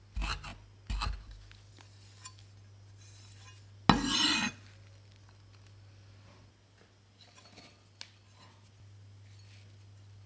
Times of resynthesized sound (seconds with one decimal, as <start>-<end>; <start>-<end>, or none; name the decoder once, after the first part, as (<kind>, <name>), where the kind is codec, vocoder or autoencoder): none